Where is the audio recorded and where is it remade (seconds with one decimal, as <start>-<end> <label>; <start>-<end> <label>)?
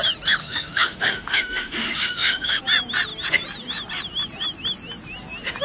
0.0-0.4 recorded; 0.4-2.6 remade; 2.6-5.6 recorded